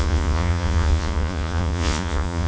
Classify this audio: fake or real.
fake